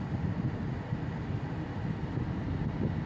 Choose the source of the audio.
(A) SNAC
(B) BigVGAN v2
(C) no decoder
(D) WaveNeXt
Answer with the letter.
C